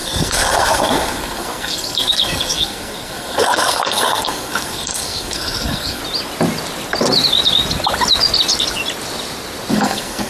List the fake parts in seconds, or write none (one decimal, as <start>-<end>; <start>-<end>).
0.0-6.0; 9.7-10.3